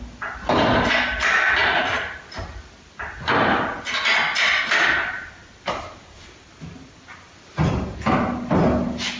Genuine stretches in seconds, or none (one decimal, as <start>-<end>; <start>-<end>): 0.0-1.6; 2.2-9.2